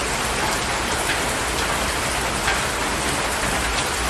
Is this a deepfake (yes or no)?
no